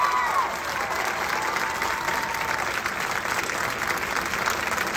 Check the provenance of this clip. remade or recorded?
recorded